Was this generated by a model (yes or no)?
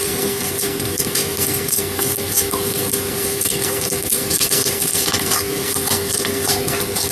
yes